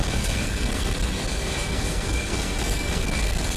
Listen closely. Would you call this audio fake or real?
fake